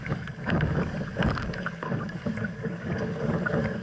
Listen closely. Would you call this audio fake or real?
fake